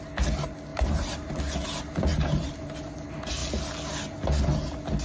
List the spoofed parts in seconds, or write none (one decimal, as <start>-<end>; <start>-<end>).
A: 0.7-1.3; 2.1-2.9